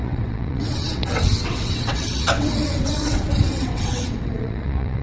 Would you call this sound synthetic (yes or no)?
yes